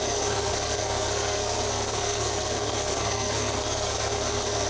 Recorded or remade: remade